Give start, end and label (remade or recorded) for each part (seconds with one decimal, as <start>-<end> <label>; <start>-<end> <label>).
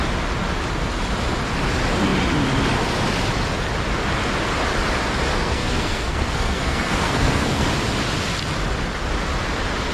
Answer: 0.0-5.3 recorded; 5.3-7.7 remade; 7.7-9.9 recorded